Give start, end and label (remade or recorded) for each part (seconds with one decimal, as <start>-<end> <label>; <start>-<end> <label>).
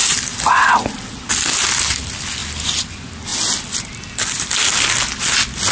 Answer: 0.0-5.7 recorded